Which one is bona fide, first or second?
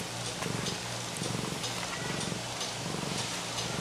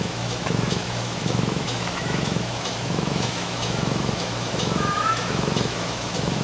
first